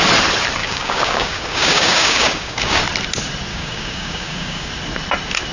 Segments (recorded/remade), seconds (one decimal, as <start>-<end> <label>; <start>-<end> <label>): 0.0-0.6 recorded; 0.6-2.8 remade; 2.8-3.5 recorded; 3.5-4.7 remade; 4.7-5.5 recorded